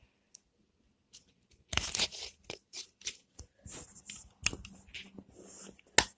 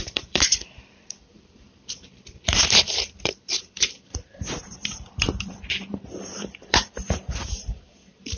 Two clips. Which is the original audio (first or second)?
first